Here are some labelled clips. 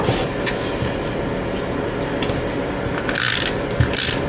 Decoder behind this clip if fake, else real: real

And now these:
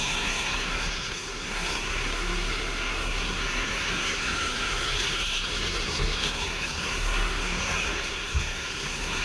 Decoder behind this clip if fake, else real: fake, codec, SNAC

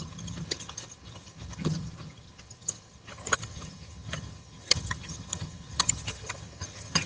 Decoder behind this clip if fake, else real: fake, vocoder, HiFi-GAN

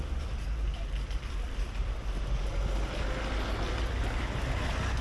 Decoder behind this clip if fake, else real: real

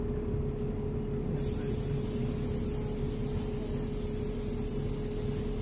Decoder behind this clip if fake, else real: real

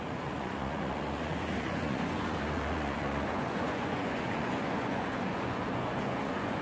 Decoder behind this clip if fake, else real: fake, vocoder, Vocos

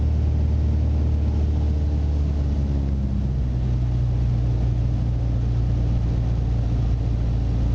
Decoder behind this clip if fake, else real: real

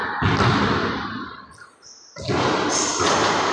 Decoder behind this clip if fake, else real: real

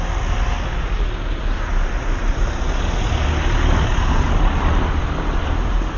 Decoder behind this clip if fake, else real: real